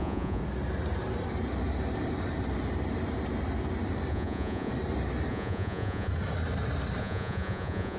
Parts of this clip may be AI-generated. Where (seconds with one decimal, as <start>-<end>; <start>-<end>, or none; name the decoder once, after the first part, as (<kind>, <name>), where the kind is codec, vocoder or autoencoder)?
0.0-0.4 (vocoder, Vocos); 4.1-4.7; 5.3-6.1; 7.0-8.0